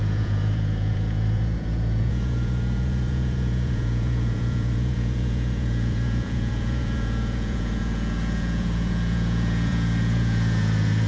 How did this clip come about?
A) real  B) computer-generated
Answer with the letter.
B